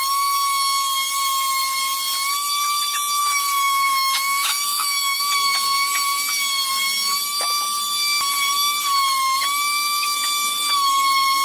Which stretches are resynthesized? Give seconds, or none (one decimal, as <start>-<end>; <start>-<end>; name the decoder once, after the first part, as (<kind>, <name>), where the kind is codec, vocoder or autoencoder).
3.2-5.2 (autoencoder, DAC-VAE)

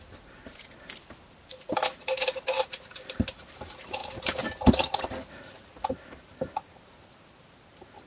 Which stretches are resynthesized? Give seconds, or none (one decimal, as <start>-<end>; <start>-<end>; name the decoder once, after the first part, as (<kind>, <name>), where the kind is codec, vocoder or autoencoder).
none

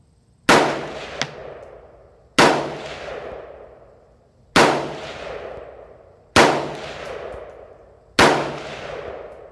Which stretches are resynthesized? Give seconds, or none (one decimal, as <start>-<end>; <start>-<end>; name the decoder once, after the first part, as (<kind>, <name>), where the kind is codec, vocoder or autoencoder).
none

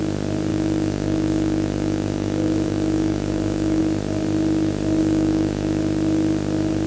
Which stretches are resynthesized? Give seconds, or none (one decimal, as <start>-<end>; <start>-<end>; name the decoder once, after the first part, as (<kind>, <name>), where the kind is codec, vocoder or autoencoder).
0.5-3.8 (autoencoder, DAC-VAE); 5.0-5.8

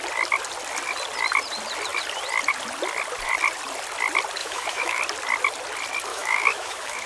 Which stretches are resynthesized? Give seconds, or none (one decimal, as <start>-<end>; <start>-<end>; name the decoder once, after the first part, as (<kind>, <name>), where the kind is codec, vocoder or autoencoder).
4.4-5.0 (autoencoder, DAC-VAE); 6.1-7.1

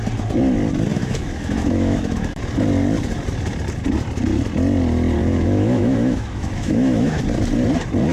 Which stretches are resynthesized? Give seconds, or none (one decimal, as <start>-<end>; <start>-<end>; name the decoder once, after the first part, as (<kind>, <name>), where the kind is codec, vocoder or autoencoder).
0.9-2.4 (autoencoder, DAC-VAE); 5.2-7.2

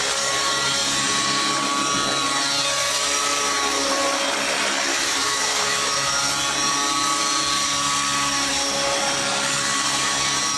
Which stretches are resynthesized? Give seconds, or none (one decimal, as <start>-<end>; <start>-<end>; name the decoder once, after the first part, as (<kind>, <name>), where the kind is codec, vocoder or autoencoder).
4.9-6.3 (autoencoder, DAC-VAE)

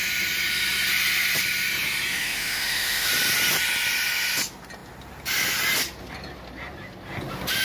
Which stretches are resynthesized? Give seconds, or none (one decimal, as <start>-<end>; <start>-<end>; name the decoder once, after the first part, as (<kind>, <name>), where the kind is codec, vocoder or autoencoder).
2.1-3.1 (autoencoder, DAC-VAE)